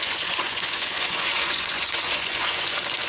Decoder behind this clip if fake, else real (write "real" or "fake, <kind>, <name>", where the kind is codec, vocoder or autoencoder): fake, vocoder, Vocos